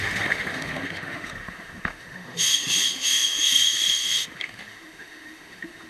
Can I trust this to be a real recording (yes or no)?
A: no